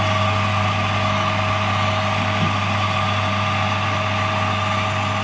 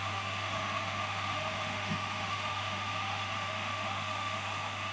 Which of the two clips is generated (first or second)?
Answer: second